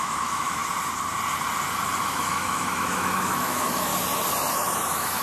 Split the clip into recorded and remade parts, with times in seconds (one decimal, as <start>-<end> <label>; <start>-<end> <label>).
0.0-0.6 remade; 0.6-2.1 recorded; 2.1-3.9 remade; 3.9-4.5 recorded; 4.5-5.2 remade